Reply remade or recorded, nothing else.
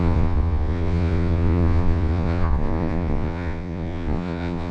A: remade